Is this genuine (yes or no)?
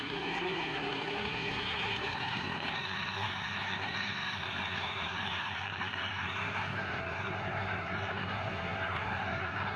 no